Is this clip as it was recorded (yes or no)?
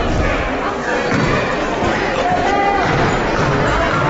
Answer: yes